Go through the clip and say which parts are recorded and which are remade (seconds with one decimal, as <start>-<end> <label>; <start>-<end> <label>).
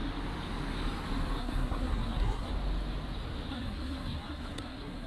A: 0.0-1.4 recorded; 1.4-2.5 remade; 2.5-3.5 recorded; 3.5-5.1 remade